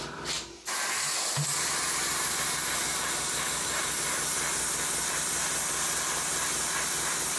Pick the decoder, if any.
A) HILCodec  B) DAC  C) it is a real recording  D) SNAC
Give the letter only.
C